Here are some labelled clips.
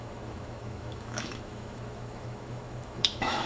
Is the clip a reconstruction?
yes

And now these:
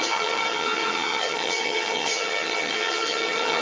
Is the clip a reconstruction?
yes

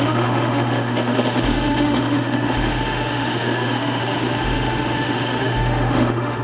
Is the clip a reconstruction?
yes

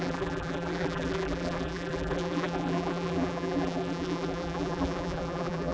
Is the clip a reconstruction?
yes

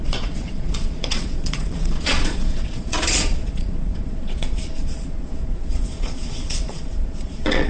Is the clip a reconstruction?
yes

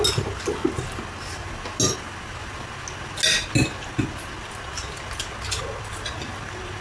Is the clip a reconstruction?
no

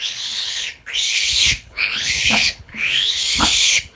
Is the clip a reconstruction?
yes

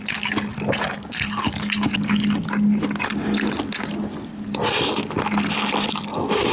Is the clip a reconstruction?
no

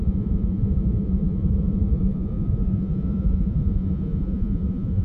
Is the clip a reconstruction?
yes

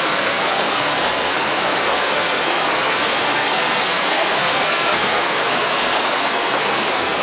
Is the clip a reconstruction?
yes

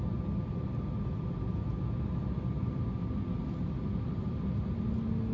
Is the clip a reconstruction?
no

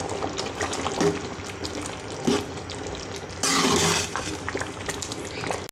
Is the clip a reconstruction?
no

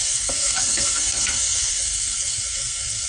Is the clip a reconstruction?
yes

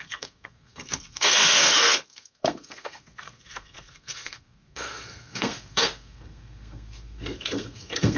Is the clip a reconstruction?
yes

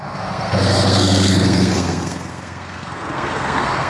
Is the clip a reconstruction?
yes